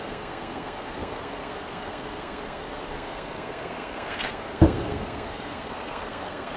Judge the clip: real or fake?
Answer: fake